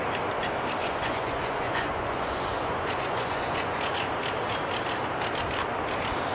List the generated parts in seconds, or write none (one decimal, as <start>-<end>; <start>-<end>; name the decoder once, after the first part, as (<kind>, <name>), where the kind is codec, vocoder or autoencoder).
0.8-4.1 (vocoder, Vocos)